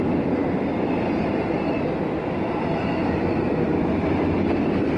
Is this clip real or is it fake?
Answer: real